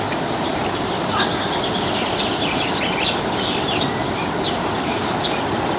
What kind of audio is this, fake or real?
real